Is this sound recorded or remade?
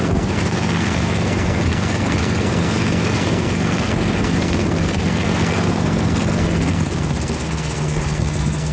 remade